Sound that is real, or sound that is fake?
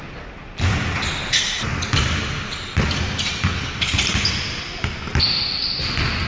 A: real